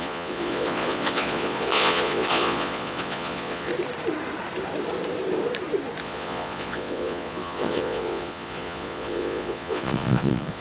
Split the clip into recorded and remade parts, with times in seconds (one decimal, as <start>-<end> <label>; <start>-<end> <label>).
0.0-3.7 remade; 3.7-6.0 recorded; 6.0-10.6 remade